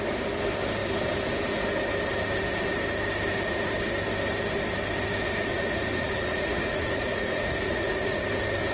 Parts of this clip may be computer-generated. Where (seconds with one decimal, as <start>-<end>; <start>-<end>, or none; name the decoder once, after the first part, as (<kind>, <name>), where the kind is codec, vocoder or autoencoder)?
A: 5.5-8.2 (vocoder, Vocos)